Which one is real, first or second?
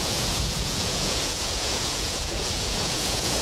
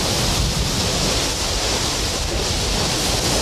second